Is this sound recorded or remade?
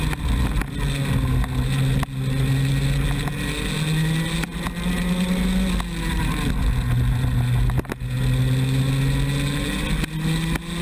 recorded